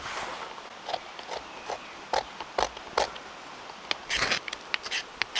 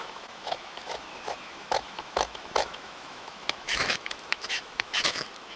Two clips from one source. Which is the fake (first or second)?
second